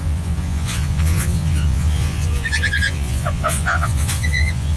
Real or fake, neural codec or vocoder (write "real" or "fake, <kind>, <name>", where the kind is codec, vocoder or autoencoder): fake, vocoder, Vocos